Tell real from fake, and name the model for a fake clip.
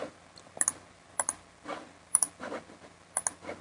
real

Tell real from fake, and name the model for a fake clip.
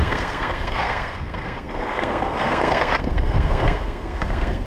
fake, codec, SNAC